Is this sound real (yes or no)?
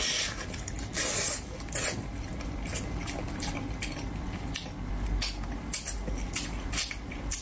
yes